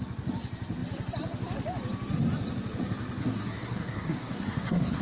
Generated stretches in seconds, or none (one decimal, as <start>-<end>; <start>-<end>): 3.2-5.0